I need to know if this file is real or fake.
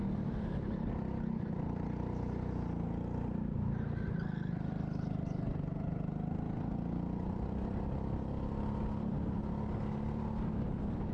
real